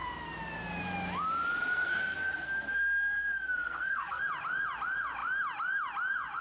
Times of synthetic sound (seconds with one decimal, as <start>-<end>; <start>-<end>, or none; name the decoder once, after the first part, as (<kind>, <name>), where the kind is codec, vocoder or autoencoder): 1.6-4.2 (codec, SNAC)